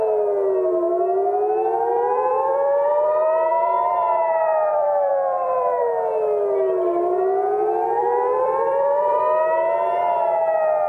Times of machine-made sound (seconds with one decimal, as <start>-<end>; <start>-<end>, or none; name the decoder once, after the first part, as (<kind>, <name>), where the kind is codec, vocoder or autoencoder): 1.9-5.8 (vocoder, BigVGAN v2); 8.0-9.2